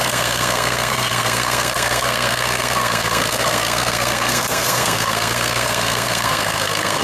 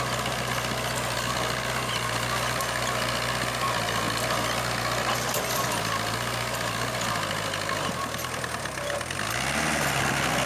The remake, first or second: first